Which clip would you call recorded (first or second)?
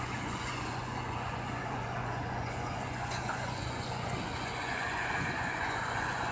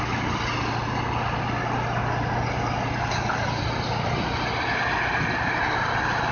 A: second